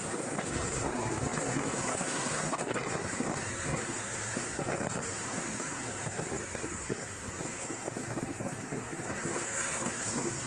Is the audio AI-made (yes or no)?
yes